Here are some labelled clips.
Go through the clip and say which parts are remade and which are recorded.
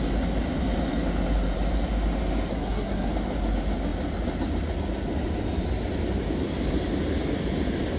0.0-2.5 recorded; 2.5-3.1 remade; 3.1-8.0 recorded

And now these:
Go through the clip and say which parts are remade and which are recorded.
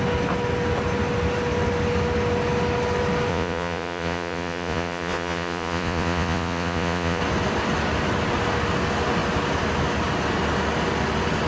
0.0-3.3 recorded; 3.3-7.2 remade; 7.2-11.5 recorded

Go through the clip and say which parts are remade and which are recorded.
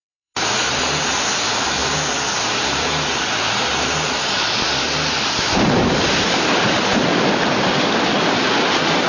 0.0-6.9 remade; 6.9-9.1 recorded